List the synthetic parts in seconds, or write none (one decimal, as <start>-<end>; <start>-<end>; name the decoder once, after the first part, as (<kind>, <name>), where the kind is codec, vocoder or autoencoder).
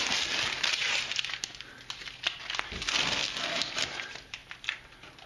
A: none